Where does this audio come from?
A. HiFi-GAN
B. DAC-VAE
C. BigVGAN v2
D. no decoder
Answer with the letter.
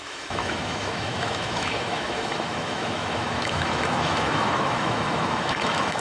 B